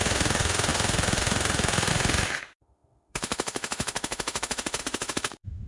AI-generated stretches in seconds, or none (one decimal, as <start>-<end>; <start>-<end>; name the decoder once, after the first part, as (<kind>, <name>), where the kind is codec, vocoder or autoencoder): 0.0-5.7 (autoencoder, DAC-VAE)